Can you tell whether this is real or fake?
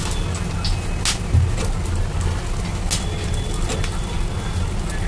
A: real